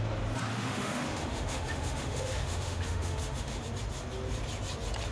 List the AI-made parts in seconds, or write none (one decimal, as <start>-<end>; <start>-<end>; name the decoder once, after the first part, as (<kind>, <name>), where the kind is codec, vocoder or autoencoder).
0.5-3.6 (autoencoder, DAC-VAE)